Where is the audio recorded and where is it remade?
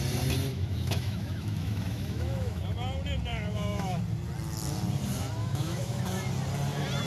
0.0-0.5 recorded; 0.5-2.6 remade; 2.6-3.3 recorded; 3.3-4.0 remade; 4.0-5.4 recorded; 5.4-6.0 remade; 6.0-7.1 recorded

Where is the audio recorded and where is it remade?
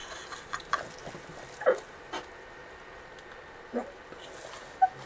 0.0-3.1 remade; 3.1-5.1 recorded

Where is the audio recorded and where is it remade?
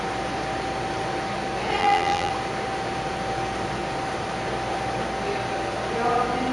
0.0-1.8 recorded; 1.8-2.3 remade; 2.3-6.5 recorded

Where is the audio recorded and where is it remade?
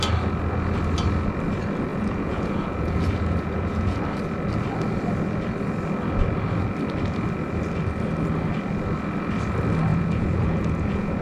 0.0-1.9 recorded; 1.9-4.0 remade; 4.0-9.9 recorded; 9.9-11.2 remade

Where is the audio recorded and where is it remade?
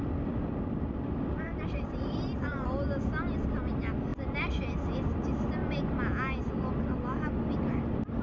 0.0-8.2 recorded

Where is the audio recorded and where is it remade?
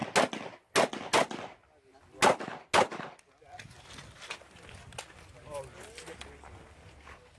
0.0-7.4 recorded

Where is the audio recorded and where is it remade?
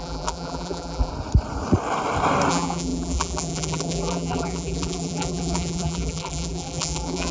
0.0-1.1 remade; 1.1-2.5 recorded; 2.5-7.3 remade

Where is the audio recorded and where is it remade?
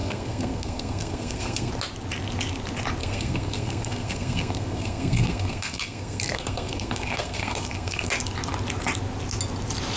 0.0-1.7 remade; 1.7-3.0 recorded; 3.0-8.1 remade; 8.1-10.0 recorded